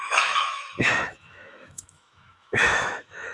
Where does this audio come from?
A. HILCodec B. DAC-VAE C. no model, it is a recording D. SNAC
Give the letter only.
B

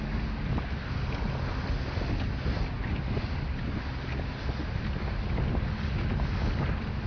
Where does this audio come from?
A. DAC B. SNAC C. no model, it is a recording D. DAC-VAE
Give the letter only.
C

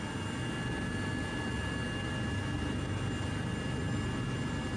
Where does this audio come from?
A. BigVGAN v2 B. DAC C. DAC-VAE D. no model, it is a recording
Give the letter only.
D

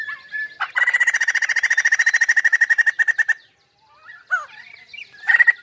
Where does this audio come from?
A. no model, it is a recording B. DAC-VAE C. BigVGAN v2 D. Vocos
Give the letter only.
A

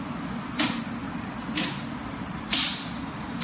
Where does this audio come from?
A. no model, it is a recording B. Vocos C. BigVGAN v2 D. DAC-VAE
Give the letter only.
A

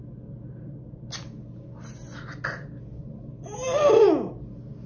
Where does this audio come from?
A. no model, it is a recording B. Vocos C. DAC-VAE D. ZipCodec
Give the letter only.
A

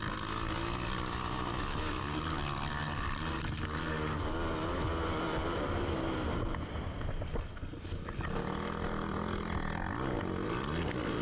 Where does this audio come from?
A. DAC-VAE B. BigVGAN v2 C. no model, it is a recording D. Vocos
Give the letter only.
C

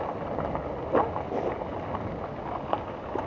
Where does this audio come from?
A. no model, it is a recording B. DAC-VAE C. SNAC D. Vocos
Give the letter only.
A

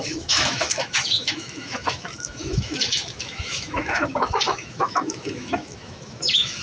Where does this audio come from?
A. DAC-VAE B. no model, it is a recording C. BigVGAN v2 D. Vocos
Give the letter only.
A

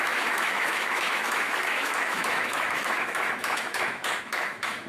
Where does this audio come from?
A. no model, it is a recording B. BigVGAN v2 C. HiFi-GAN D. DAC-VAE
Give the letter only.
D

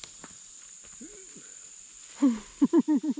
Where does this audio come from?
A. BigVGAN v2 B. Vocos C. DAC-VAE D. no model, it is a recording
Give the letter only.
D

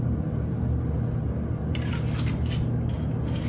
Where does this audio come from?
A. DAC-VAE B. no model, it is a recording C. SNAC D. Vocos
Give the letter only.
B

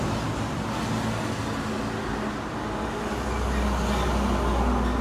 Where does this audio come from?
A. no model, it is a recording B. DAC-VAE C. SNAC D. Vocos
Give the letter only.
A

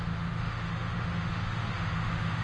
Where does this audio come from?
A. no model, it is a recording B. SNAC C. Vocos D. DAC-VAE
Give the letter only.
D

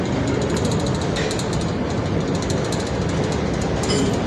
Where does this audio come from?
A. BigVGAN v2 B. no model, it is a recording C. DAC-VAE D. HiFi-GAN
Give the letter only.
B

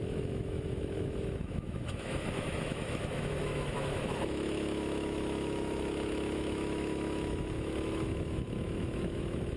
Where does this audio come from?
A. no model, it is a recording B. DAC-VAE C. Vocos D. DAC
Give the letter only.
B